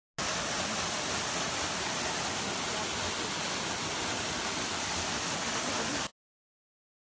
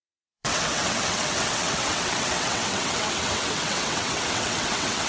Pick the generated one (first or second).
second